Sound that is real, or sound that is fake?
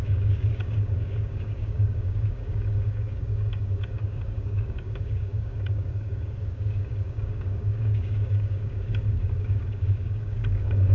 fake